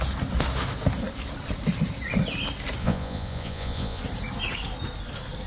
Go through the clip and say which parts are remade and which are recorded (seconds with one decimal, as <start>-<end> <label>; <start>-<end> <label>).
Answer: 0.0-2.8 recorded; 2.8-4.0 remade; 4.0-5.5 recorded